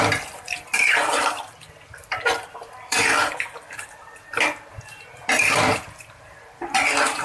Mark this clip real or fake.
fake